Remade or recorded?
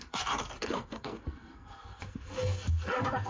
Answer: remade